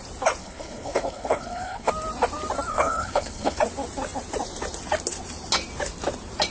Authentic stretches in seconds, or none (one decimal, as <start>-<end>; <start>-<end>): 0.0-0.4; 1.9-2.7; 3.6-6.5